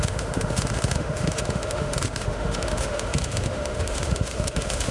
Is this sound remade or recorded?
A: remade